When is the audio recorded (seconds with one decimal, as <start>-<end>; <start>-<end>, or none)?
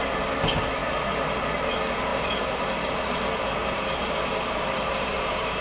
0.0-2.1